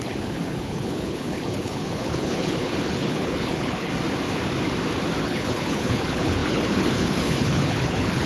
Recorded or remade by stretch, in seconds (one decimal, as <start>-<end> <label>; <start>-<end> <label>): 0.0-3.9 remade; 3.9-5.2 recorded; 5.2-8.3 remade